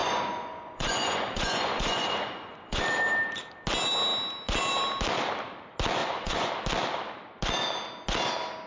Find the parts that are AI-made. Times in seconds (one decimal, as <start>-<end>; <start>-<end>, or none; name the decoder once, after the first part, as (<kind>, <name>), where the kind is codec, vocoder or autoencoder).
0.0-2.8 (vocoder, Vocos); 6.0-6.5